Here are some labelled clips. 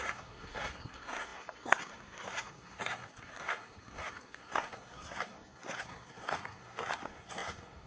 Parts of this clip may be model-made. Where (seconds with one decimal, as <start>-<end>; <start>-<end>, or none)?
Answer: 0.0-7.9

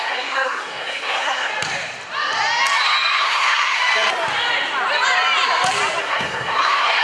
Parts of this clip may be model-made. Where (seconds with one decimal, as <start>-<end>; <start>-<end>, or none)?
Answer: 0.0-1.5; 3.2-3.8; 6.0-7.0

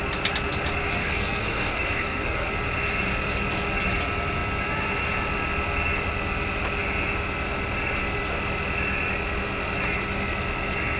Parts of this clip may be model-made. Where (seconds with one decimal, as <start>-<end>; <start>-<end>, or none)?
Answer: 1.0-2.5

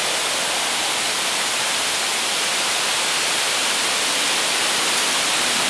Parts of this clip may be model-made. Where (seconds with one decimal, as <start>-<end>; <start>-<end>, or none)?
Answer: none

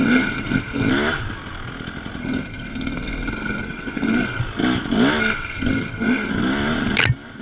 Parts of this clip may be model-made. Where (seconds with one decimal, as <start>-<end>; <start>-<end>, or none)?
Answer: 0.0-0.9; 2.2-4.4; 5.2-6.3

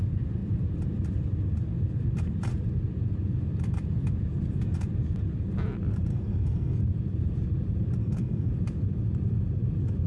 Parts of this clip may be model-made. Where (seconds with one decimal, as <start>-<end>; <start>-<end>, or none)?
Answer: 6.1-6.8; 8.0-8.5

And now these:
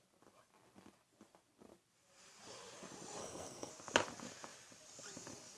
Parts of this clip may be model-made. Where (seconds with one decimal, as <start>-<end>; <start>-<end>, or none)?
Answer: 3.2-3.7

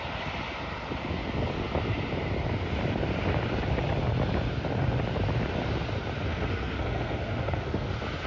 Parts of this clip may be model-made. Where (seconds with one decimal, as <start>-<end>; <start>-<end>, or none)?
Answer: 6.3-7.9